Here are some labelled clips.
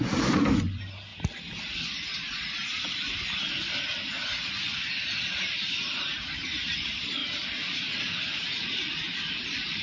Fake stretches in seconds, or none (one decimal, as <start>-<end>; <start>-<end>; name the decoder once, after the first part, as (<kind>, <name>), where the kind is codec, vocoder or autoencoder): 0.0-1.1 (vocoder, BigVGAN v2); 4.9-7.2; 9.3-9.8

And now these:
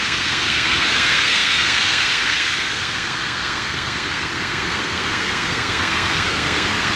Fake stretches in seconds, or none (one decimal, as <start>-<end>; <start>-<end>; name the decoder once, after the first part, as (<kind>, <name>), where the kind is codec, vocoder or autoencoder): 0.0-7.0 (codec, SNAC)

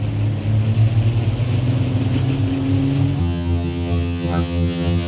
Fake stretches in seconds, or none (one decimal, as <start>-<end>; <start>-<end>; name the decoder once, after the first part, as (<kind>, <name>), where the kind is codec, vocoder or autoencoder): 3.2-5.1 (vocoder, HiFi-GAN)

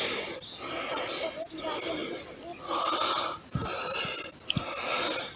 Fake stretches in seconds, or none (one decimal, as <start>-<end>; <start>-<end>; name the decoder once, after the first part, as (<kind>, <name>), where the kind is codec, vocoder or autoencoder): none

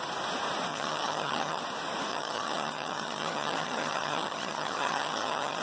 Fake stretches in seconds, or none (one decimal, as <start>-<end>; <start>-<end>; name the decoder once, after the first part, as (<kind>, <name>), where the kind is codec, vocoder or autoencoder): 0.7-1.6 (vocoder, HiFi-GAN); 2.1-5.6